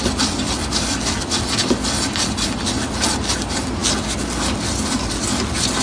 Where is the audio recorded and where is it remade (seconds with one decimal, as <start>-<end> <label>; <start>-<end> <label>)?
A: 0.0-5.8 recorded